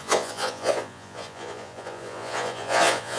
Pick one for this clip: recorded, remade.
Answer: remade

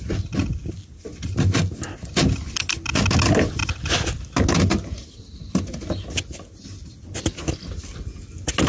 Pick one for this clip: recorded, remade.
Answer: recorded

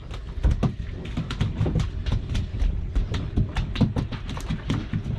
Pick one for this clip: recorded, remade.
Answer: recorded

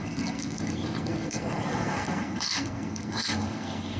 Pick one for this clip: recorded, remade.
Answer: remade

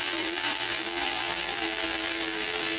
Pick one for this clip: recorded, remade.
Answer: remade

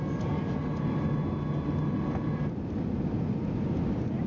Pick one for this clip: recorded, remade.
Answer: recorded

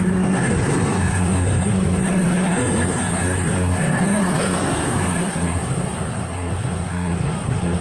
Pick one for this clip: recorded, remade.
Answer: remade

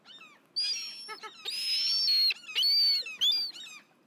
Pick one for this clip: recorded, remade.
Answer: recorded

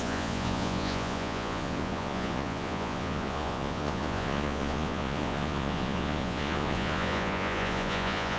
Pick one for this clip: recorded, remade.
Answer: remade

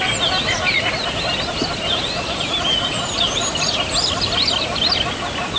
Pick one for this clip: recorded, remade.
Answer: recorded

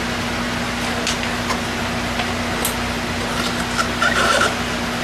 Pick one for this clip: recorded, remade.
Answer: recorded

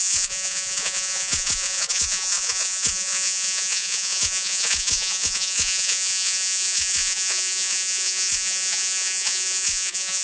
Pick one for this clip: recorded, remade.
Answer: remade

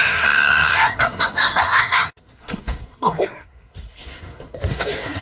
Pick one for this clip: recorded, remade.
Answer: remade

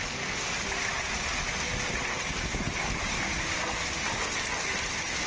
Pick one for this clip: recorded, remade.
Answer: recorded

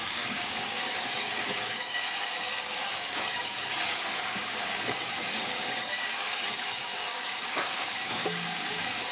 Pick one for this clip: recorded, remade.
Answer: remade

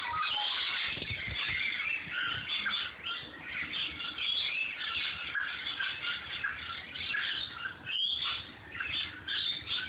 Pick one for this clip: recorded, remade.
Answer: recorded